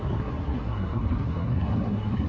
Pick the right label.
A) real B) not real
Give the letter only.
B